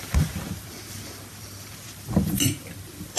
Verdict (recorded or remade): remade